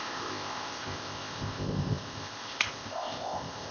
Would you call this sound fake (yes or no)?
yes